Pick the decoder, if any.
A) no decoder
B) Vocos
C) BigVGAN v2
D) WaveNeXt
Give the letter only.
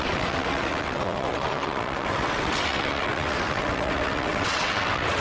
D